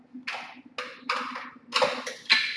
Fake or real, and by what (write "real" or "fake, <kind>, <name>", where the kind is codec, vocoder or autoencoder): real